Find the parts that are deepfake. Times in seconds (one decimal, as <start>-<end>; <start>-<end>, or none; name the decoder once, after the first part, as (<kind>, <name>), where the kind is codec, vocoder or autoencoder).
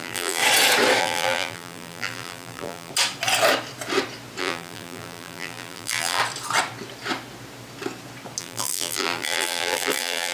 0.0-0.4 (vocoder, BigVGAN v2); 1.0-2.9; 4.4-6.2; 8.4-10.3